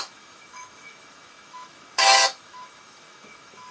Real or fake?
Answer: fake